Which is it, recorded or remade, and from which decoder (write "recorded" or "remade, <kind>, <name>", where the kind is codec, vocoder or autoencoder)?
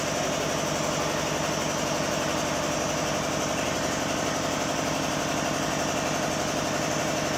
recorded